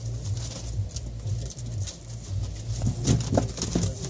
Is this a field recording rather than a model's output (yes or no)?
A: yes